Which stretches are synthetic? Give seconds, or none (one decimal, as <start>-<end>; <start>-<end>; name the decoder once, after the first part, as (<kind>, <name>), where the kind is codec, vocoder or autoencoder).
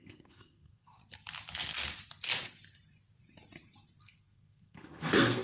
0.0-1.0 (codec, SNAC); 4.0-5.4